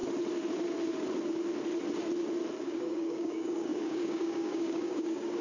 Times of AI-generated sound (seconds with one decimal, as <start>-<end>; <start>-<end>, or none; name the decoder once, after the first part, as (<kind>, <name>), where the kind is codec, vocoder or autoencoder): 2.6-5.4 (codec, DAC)